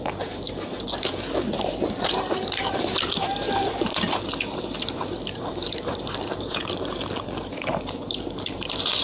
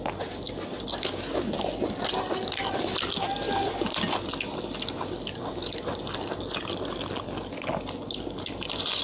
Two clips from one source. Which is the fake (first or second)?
first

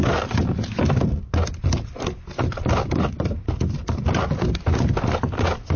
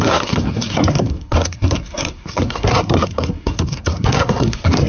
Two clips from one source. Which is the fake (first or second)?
second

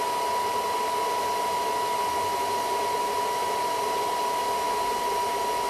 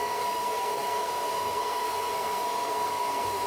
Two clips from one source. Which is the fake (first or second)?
second